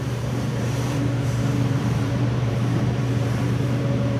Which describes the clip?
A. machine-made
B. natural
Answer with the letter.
A